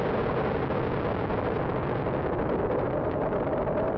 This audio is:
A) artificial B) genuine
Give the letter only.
B